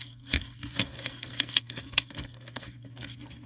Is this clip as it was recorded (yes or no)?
no